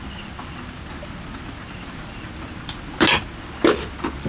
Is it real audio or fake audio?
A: real